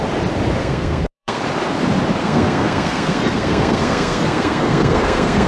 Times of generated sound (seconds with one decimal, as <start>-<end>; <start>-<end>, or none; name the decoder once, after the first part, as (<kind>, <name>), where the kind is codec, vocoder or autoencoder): 0.6-1.4 (codec, SNAC); 2.2-5.5